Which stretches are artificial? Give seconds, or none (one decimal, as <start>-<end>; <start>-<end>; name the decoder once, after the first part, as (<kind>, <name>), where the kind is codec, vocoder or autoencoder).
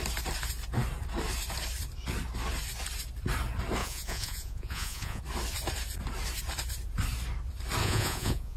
3.8-5.2 (vocoder, Vocos); 7.8-8.6